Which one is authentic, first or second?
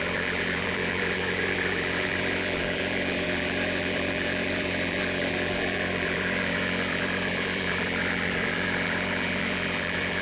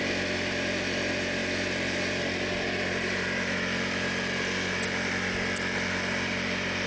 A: second